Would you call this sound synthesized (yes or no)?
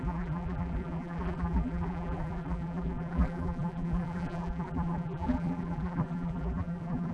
yes